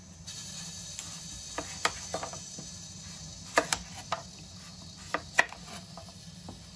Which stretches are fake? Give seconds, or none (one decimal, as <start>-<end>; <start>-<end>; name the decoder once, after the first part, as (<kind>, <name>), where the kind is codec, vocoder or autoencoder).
none